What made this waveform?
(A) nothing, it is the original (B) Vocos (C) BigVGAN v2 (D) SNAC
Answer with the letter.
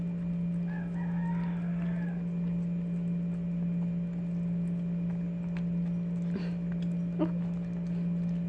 A